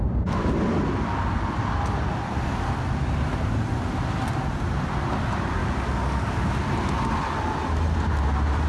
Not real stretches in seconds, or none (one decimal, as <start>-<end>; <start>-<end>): 5.6-6.5